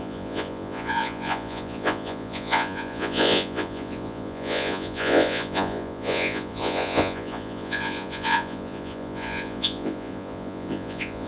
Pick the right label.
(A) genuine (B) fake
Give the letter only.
B